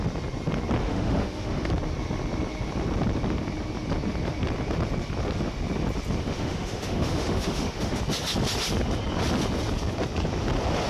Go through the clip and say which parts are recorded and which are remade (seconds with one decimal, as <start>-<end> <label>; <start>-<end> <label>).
0.0-0.8 recorded; 0.8-1.7 remade; 1.7-6.2 recorded; 6.2-8.0 remade; 8.0-10.9 recorded